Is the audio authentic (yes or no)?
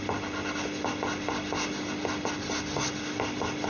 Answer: yes